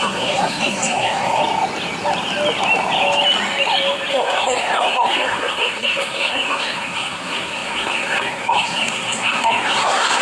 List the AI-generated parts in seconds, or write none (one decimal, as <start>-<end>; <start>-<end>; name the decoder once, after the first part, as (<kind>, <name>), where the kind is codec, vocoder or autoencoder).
0.0-1.4 (codec, SNAC); 4.1-10.2